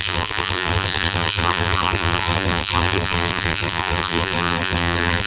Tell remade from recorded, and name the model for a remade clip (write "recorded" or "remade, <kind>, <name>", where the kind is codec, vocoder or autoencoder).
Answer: remade, vocoder, BigVGAN v2